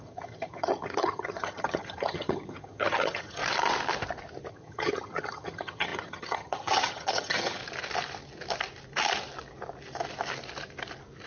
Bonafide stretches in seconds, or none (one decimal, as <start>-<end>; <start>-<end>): 3.4-4.5; 7.6-11.3